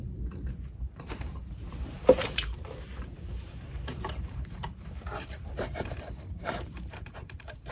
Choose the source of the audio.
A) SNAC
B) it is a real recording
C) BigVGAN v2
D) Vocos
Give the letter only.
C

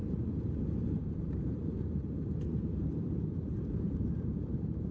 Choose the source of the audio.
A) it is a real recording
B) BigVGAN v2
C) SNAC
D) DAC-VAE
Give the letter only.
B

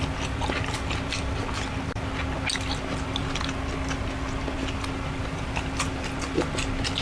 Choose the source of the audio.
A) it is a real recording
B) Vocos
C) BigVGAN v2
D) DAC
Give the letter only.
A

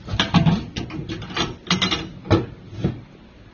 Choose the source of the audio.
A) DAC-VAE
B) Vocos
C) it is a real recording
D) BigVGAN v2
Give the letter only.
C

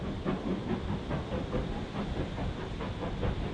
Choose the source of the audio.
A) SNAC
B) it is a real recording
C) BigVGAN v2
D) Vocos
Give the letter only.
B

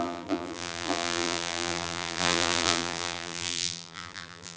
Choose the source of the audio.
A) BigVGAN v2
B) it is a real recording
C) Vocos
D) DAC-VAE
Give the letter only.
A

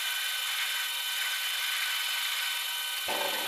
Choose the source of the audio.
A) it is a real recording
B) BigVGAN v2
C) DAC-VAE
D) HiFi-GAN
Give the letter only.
A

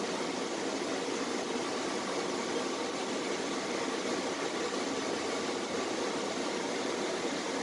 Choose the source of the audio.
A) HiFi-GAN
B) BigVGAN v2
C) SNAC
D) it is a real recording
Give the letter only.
D